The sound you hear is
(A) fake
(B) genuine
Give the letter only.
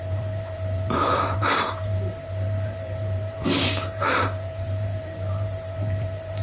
A